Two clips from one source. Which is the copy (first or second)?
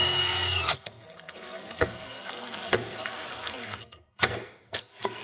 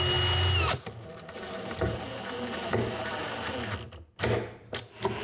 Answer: first